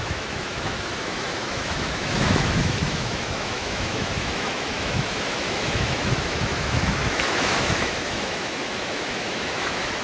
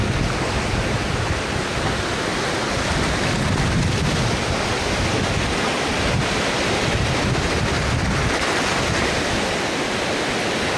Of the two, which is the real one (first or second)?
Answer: second